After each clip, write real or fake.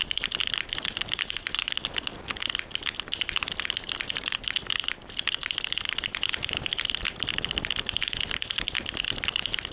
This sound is real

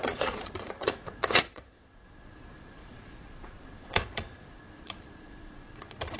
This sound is fake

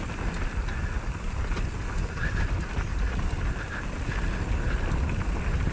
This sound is real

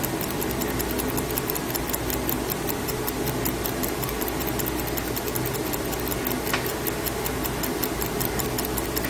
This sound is real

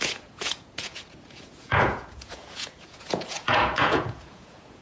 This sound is fake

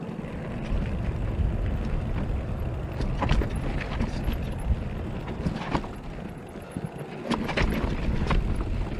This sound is real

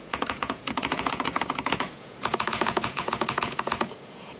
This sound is fake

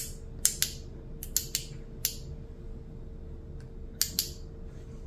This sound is real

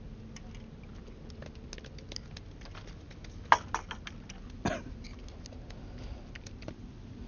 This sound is real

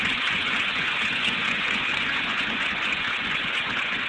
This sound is fake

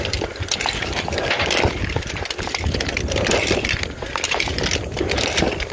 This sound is real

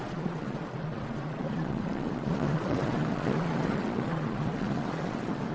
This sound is fake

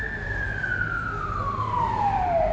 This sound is real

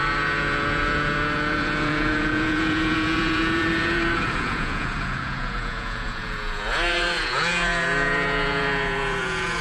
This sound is fake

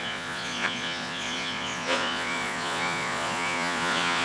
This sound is fake